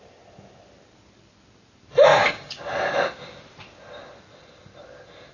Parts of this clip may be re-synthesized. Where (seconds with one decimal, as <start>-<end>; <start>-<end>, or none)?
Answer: 2.1-2.6